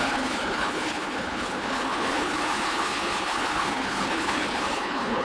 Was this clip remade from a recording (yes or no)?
yes